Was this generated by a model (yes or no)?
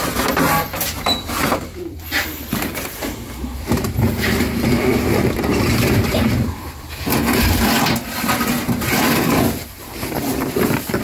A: yes